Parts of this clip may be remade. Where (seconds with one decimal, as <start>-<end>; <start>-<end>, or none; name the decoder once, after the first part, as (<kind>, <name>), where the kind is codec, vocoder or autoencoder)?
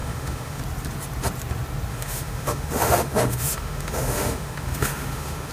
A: 0.0-0.6 (autoencoder, DAC-VAE); 1.9-5.5